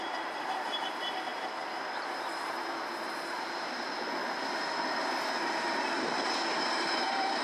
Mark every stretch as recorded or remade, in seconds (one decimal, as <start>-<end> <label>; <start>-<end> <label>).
0.0-4.2 remade; 4.2-6.5 recorded; 6.5-7.4 remade